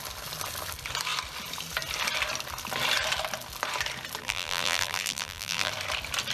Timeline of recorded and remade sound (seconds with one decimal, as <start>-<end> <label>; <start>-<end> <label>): 0.0-4.2 recorded; 4.2-5.7 remade; 5.7-6.3 recorded